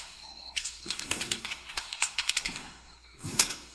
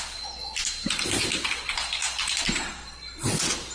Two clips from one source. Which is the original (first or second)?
second